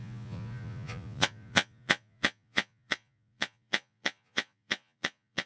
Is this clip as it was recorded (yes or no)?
no